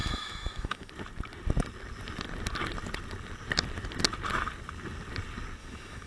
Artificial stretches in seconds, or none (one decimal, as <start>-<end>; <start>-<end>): 0.0-0.9; 5.6-6.1